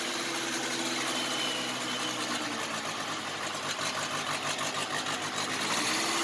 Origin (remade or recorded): recorded